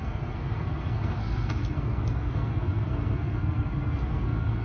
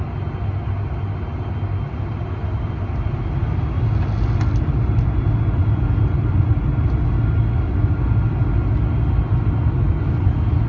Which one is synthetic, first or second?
first